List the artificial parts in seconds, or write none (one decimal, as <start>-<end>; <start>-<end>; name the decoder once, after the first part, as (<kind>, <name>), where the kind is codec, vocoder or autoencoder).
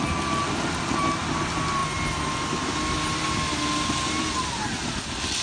none